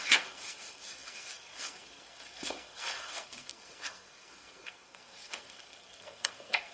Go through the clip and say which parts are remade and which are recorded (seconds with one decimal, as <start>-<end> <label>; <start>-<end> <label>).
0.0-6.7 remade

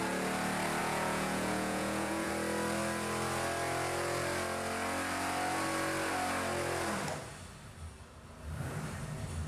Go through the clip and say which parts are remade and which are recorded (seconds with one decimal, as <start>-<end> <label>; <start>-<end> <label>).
0.0-0.8 recorded; 0.8-2.3 remade; 2.3-9.5 recorded

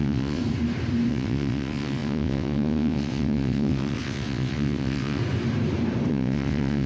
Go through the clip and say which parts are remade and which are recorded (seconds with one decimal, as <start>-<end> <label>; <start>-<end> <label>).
0.0-0.4 remade; 0.4-1.1 recorded; 1.1-5.2 remade; 5.2-6.1 recorded; 6.1-6.9 remade